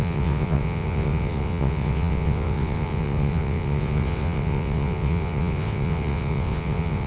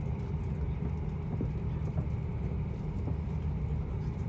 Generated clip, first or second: first